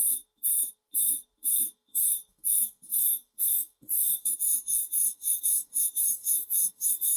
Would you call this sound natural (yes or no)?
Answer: no